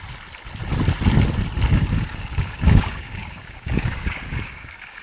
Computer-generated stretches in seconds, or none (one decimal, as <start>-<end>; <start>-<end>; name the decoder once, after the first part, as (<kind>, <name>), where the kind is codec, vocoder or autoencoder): 1.7-5.0 (codec, DAC)